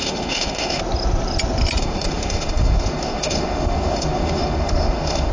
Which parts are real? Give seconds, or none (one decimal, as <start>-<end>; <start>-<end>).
0.8-1.8